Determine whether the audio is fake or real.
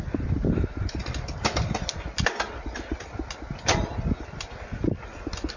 real